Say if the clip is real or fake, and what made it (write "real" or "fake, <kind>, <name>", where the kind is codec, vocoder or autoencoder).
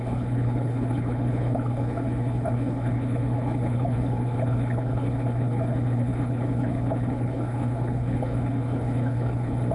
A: fake, codec, HILCodec